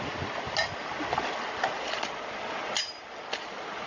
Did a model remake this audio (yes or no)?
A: no